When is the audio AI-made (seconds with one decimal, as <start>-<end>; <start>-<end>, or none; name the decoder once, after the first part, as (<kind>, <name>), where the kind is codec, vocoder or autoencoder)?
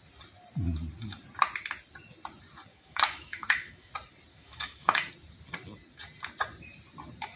2.7-3.9 (autoencoder, DAC-VAE); 4.3-5.1